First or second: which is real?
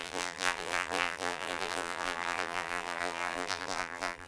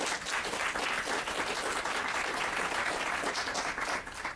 second